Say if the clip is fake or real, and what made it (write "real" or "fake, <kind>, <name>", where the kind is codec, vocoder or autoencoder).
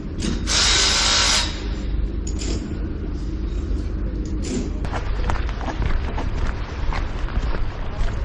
real